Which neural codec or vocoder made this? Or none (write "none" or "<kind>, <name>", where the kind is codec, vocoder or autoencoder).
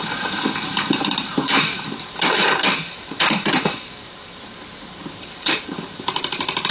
vocoder, BigVGAN v2